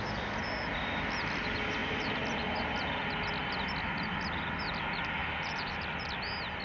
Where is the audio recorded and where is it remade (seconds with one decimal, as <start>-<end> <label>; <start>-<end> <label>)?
0.0-5.2 recorded; 5.2-5.7 remade; 5.7-6.6 recorded